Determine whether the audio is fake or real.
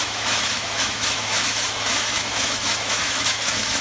fake